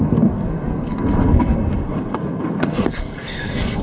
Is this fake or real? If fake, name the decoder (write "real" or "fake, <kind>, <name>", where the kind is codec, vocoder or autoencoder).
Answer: fake, codec, SNAC